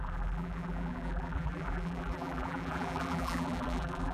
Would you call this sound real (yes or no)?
no